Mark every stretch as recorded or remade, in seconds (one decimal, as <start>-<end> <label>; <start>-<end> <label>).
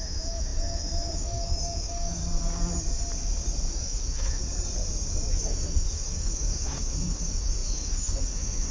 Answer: 0.0-2.2 remade; 2.2-3.7 recorded; 3.7-4.4 remade; 4.4-5.3 recorded; 5.3-8.7 remade